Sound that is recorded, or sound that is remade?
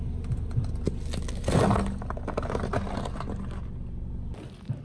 recorded